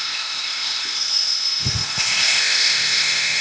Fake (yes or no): yes